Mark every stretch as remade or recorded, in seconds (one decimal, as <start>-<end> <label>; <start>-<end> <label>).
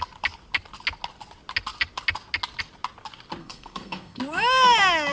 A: 0.0-3.4 recorded; 3.4-4.2 remade; 4.2-5.1 recorded